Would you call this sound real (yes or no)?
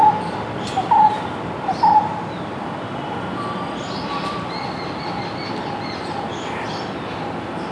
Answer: yes